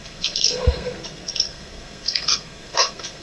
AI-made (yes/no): yes